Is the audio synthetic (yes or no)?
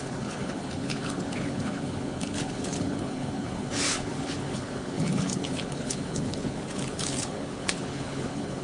yes